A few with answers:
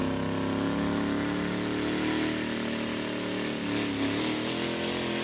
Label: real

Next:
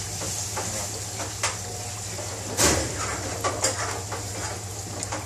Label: real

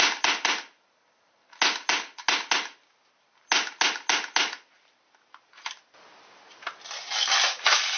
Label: real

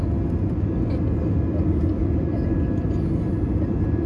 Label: real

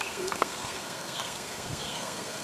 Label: fake